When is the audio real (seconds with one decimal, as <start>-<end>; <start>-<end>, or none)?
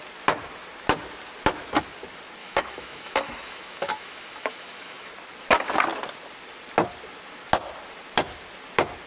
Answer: 0.0-2.4; 5.1-9.1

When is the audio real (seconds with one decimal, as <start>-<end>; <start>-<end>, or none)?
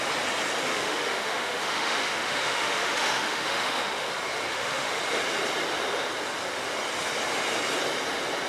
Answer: 0.0-0.7; 4.1-4.5; 5.0-8.5